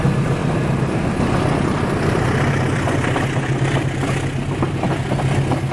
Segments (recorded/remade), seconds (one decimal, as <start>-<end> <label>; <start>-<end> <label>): 0.0-0.4 recorded; 0.4-3.8 remade; 3.8-5.7 recorded